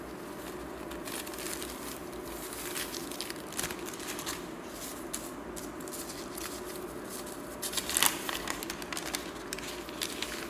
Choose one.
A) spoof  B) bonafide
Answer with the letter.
B